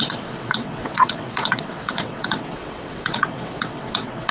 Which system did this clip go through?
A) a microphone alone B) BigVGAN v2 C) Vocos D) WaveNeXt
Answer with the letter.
D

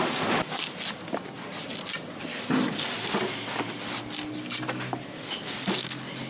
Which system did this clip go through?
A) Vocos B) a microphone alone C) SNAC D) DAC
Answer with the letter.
B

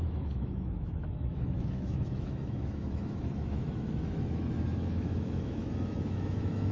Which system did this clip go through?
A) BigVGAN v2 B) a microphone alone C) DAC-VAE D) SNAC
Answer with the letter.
C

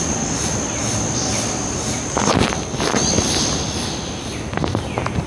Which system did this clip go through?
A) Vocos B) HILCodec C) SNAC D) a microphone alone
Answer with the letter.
D